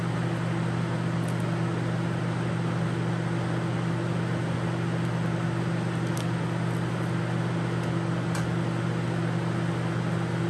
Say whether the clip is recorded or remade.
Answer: recorded